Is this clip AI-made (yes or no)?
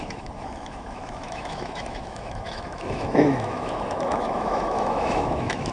yes